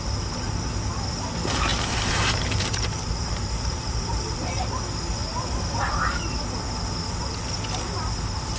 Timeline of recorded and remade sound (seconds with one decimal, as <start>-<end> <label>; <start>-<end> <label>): 0.0-1.7 recorded; 1.7-4.7 remade; 4.7-8.6 recorded